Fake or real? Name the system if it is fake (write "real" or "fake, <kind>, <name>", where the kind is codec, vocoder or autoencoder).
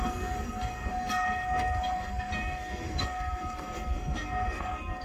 fake, codec, SNAC